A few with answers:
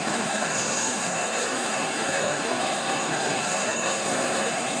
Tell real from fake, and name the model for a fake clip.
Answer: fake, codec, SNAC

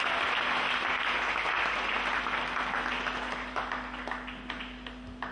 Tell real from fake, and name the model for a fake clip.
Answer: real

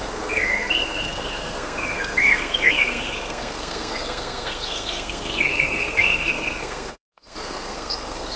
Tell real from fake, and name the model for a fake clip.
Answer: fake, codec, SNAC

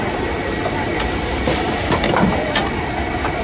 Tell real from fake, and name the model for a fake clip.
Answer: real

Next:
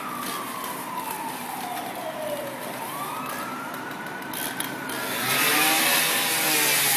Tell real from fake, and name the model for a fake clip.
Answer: real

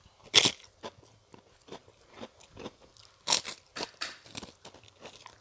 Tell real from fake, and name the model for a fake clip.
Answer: real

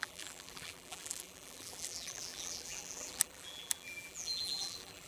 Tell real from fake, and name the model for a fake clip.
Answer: fake, vocoder, BigVGAN v2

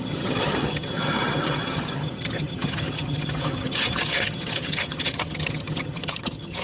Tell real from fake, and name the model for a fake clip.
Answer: fake, vocoder, HiFi-GAN